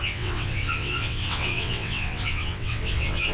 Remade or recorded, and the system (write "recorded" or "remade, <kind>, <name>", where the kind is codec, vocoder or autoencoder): remade, vocoder, WaveNeXt